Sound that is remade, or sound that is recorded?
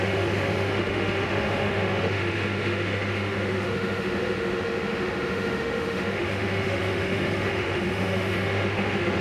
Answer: remade